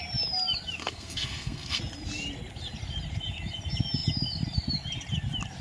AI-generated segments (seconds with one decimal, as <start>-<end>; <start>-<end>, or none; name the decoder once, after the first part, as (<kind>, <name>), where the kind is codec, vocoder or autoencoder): 0.8-1.8 (codec, SNAC)